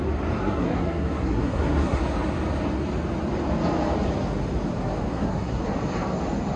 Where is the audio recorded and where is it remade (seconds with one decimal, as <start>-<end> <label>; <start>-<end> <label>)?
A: 0.0-0.4 recorded; 0.4-2.0 remade; 2.0-5.1 recorded; 5.1-5.6 remade; 5.6-6.6 recorded